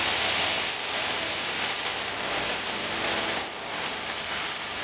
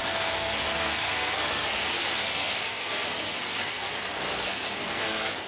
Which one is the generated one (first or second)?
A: second